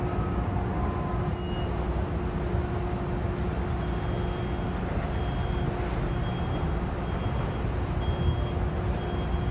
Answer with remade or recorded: recorded